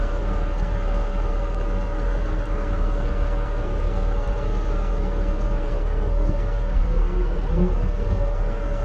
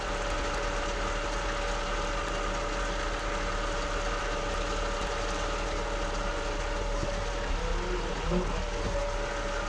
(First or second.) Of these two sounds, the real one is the second